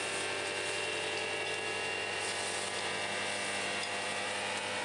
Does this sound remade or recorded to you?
recorded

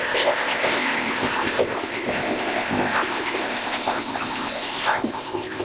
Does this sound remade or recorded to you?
remade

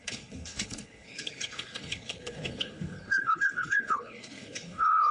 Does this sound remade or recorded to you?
remade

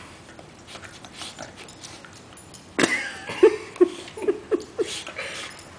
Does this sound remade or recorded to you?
recorded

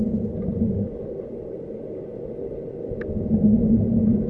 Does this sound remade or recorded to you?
recorded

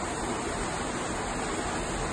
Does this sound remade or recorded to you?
recorded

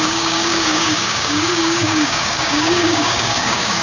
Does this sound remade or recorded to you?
remade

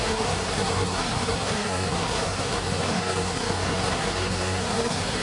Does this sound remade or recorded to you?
remade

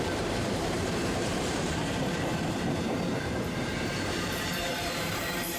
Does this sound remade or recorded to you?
remade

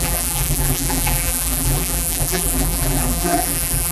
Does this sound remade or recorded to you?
remade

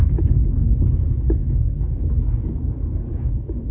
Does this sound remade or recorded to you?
remade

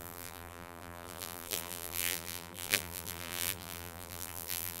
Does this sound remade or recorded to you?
remade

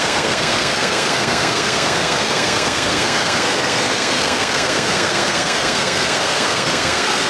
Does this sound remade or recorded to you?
remade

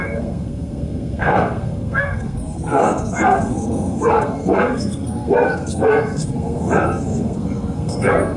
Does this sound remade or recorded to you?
remade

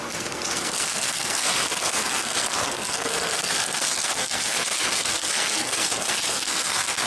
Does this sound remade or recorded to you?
remade